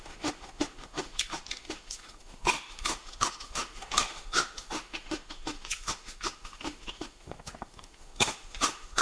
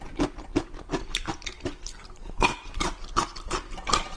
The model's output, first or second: first